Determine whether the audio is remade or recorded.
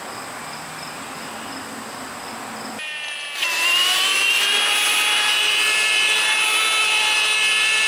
recorded